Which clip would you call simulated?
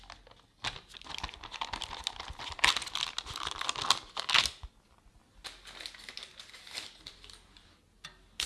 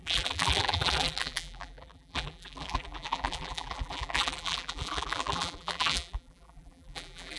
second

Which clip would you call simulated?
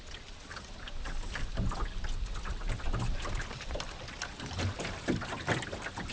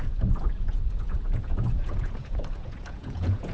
second